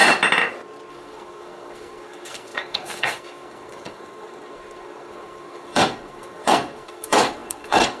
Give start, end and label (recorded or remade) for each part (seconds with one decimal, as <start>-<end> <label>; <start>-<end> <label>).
0.0-0.9 recorded; 0.9-8.0 remade